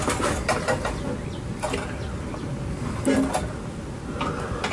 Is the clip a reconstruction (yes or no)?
no